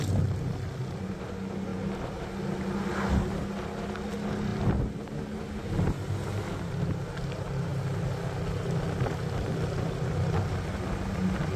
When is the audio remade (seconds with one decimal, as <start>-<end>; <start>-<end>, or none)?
none